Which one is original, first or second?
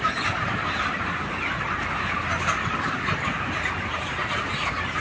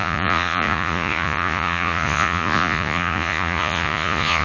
first